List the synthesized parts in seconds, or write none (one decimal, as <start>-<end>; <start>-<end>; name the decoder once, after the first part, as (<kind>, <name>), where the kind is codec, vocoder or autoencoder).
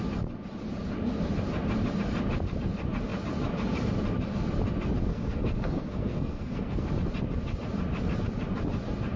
5.1-6.9 (codec, SNAC)